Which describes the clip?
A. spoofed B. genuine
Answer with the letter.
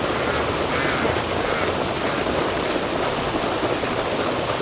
B